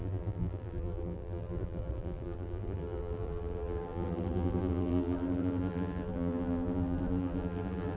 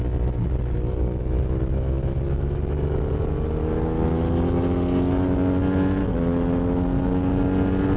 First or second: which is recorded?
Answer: second